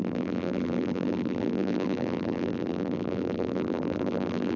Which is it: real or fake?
fake